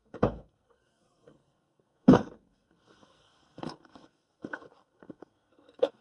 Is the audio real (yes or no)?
no